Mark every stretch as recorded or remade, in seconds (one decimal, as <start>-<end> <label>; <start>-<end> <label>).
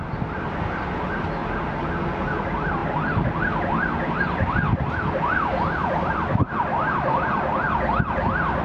0.0-8.6 recorded